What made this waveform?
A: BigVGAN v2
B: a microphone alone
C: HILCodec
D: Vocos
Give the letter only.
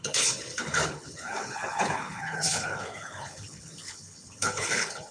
C